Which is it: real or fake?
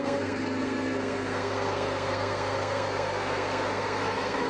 fake